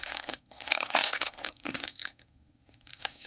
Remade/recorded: remade